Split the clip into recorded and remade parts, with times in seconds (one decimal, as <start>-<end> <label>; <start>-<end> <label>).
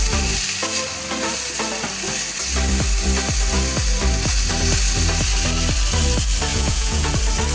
0.0-6.5 recorded; 6.5-7.1 remade; 7.1-7.5 recorded